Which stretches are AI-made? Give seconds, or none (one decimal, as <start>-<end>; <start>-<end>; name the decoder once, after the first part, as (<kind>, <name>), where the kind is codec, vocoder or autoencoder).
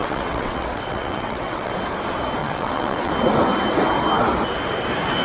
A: 0.0-1.7 (vocoder, WaveNeXt); 2.4-3.1